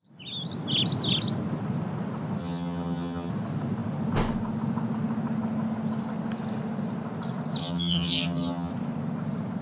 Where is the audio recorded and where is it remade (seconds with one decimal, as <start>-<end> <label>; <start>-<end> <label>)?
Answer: 0.0-2.4 recorded; 2.4-3.3 remade; 3.3-7.6 recorded; 7.6-8.7 remade; 8.7-9.6 recorded

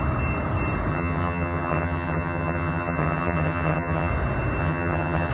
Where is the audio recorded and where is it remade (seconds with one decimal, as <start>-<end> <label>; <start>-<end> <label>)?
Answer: 0.0-0.9 recorded; 0.9-4.1 remade; 4.1-4.6 recorded; 4.6-5.3 remade